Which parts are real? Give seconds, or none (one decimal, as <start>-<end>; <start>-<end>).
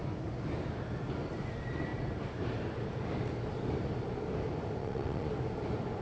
0.0-4.8; 5.3-6.0